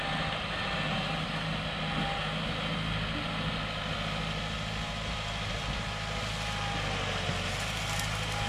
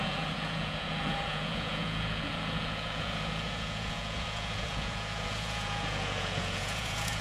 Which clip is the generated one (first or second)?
second